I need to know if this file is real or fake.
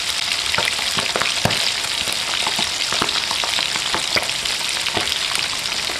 real